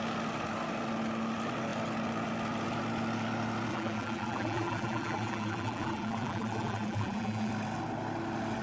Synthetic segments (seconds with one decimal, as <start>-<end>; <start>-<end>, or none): 3.7-7.5